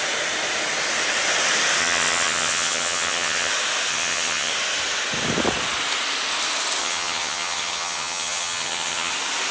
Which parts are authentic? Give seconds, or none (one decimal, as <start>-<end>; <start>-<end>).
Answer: 0.0-1.8; 3.5-3.9; 4.5-6.8; 9.1-9.5